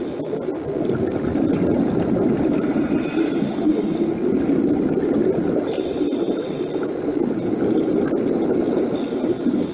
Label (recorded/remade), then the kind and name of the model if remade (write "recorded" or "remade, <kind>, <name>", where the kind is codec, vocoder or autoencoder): recorded